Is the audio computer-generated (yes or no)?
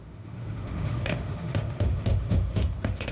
yes